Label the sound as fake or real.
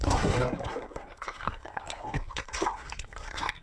fake